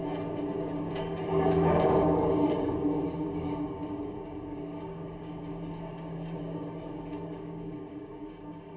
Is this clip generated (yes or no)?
yes